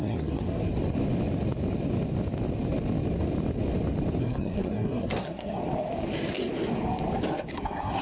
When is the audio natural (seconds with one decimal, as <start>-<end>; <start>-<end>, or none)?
0.7-4.2; 5.6-7.5